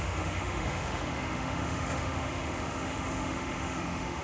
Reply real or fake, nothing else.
fake